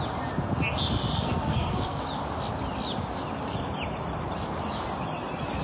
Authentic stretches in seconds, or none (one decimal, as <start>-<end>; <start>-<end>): 0.0-1.1; 2.0-5.6